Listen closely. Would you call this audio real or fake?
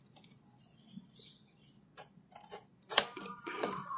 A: real